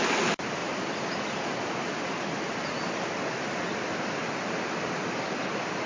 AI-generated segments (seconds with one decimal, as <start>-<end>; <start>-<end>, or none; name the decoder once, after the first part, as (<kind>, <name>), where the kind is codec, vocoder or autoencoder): none

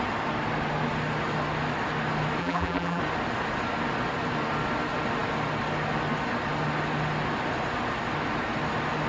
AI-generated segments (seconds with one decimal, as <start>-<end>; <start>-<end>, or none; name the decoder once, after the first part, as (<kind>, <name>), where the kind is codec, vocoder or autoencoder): 2.4-3.0 (vocoder, BigVGAN v2)

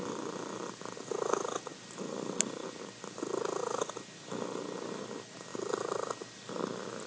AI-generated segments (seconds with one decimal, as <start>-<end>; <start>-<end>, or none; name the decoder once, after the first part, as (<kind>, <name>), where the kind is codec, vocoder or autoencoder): 1.7-2.7 (vocoder, BigVGAN v2)

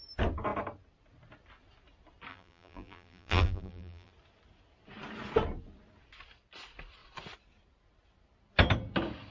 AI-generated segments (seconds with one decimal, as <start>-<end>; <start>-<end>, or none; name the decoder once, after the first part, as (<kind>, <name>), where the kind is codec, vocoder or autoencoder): 2.3-4.1 (vocoder, BigVGAN v2)

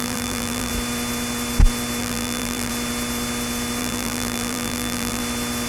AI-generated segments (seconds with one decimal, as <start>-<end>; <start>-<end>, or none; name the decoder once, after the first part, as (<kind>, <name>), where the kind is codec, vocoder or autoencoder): 0.0-0.7 (vocoder, BigVGAN v2); 2.0-2.7; 3.8-5.2

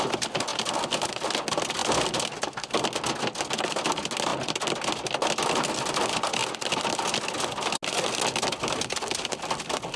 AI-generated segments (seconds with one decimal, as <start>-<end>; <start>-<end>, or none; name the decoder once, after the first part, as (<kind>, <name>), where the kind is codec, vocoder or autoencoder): none

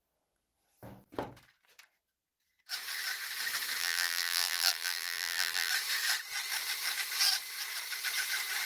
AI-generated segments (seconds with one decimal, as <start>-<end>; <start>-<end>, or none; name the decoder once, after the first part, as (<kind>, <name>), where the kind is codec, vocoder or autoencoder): 3.8-5.7 (vocoder, BigVGAN v2)

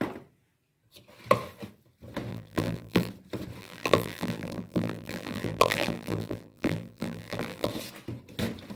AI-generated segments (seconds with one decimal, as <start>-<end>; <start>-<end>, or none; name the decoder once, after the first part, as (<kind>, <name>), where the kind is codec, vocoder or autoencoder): 2.3-3.1 (vocoder, BigVGAN v2); 3.6-7.7